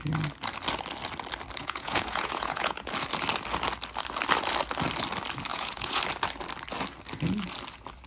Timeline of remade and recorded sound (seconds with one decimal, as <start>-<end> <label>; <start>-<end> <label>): 0.0-1.6 recorded; 1.6-2.9 remade; 2.9-5.5 recorded; 5.5-6.0 remade; 6.0-8.1 recorded